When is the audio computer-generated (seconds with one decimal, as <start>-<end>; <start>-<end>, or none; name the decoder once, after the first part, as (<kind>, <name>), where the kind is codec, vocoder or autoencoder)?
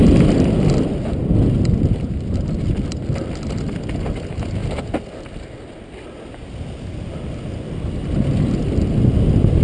none